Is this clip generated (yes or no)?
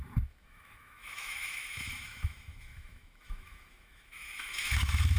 yes